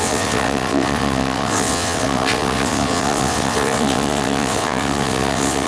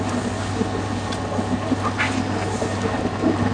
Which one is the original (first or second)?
second